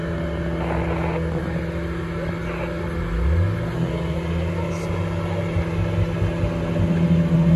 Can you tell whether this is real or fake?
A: real